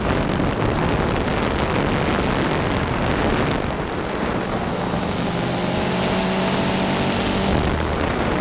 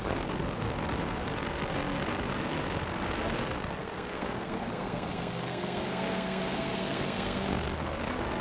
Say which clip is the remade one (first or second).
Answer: second